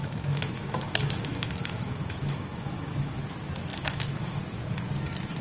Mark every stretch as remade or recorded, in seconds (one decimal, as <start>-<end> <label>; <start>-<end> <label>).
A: 0.0-3.2 remade; 3.2-3.7 recorded; 3.7-4.4 remade; 4.4-5.4 recorded